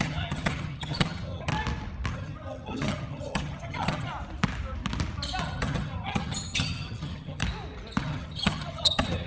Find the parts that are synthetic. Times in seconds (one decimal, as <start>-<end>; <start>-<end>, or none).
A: 0.0-1.5; 2.1-4.1; 5.4-7.4; 8.0-9.3